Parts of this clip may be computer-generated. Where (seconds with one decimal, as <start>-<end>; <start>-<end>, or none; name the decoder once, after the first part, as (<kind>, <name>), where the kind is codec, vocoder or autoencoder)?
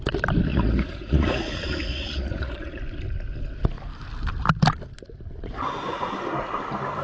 0.5-2.8 (vocoder, Vocos)